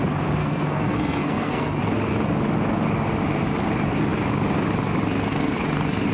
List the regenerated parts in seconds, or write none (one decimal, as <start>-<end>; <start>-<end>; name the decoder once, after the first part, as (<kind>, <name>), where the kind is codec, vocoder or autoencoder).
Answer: 0.4-1.8 (codec, SNAC)